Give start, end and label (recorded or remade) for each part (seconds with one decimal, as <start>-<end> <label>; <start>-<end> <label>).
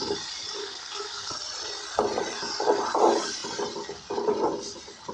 0.0-0.6 recorded; 0.6-1.3 remade; 1.3-5.1 recorded